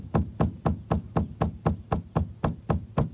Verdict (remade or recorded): recorded